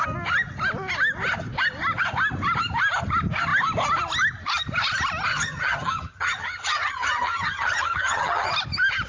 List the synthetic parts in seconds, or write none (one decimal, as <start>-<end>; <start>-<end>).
5.3-8.5